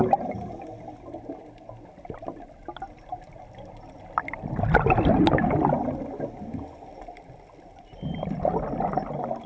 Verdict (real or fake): real